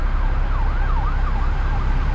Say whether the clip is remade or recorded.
recorded